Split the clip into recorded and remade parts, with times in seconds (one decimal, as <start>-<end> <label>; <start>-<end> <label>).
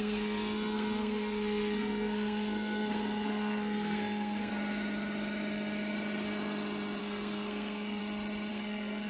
0.0-4.5 remade; 4.5-7.0 recorded; 7.0-8.0 remade; 8.0-8.5 recorded; 8.5-9.1 remade